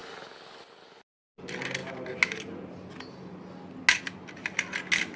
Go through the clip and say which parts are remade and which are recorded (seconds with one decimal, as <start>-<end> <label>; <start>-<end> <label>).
0.0-5.2 recorded